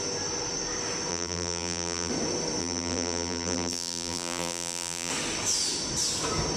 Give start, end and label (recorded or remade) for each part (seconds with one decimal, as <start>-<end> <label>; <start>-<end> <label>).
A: 0.0-1.1 recorded; 1.1-2.1 remade; 2.1-2.6 recorded; 2.6-5.1 remade; 5.1-6.6 recorded